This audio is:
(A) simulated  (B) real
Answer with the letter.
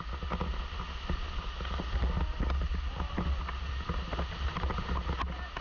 B